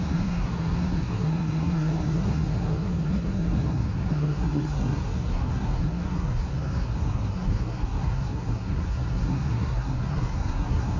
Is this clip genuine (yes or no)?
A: no